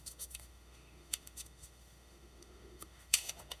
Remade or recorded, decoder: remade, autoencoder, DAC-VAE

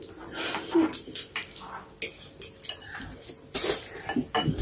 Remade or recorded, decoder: recorded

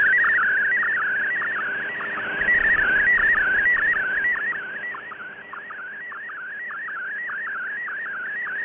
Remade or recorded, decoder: recorded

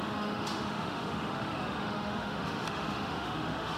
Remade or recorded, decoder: remade, autoencoder, DAC-VAE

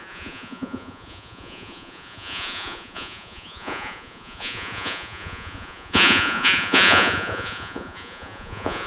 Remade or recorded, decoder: remade, vocoder, Vocos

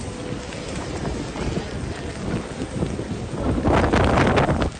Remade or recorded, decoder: recorded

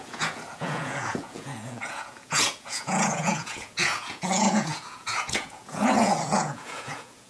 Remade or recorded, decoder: remade, vocoder, Vocos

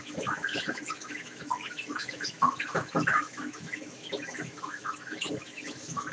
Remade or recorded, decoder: remade, autoencoder, DAC-VAE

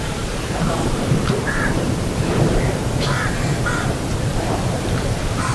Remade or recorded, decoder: remade, vocoder, BigVGAN v2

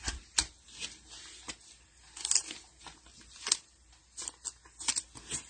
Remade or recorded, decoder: recorded